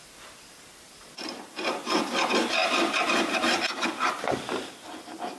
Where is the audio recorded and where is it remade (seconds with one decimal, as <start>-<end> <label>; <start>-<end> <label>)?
0.0-2.0 remade; 2.0-2.6 recorded; 2.6-5.0 remade; 5.0-5.4 recorded